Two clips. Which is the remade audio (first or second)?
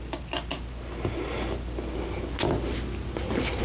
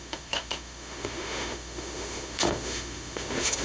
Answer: second